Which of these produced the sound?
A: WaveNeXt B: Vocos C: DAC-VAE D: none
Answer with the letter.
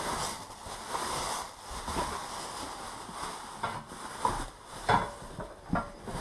D